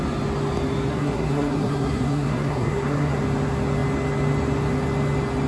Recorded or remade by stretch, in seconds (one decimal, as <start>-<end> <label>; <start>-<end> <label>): 0.0-0.9 recorded; 0.9-3.2 remade; 3.2-5.5 recorded